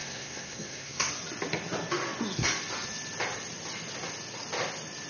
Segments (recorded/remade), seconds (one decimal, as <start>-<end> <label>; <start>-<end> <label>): 0.0-1.1 remade; 1.1-5.1 recorded